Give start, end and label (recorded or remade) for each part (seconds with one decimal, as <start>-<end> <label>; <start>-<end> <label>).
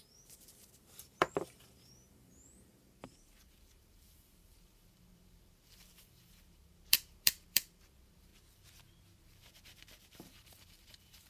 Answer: 0.0-8.3 remade; 8.3-9.2 recorded; 9.2-11.3 remade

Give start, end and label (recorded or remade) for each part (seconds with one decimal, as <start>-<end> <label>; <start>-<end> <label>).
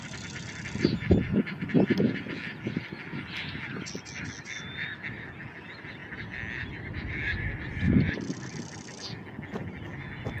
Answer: 0.0-10.4 recorded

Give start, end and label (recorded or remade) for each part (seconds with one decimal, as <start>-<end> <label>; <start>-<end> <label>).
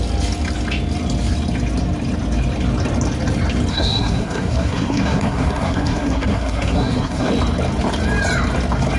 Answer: 0.0-3.7 recorded; 3.7-7.3 remade; 7.3-9.0 recorded